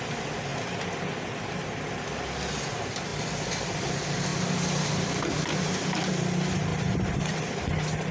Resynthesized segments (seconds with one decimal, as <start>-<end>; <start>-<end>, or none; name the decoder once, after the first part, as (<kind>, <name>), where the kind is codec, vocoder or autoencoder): 3.1-3.9 (vocoder, BigVGAN v2); 4.3-6.1; 6.7-7.5